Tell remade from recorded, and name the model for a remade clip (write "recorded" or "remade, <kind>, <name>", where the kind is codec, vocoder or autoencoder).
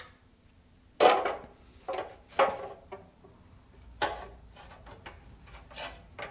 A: recorded